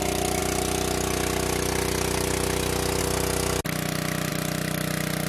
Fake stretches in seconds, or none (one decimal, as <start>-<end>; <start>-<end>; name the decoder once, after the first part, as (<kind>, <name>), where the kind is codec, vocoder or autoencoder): none